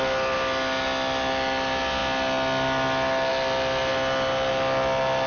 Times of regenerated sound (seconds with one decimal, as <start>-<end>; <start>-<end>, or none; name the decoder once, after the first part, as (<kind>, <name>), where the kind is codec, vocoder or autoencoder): none